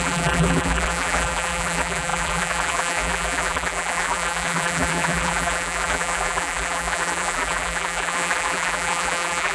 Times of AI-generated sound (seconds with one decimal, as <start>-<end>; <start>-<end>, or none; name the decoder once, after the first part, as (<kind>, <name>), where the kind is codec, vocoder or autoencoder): 0.0-9.5 (vocoder, BigVGAN v2)